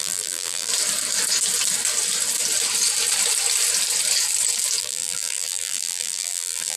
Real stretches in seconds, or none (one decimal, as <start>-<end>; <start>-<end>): 0.7-4.8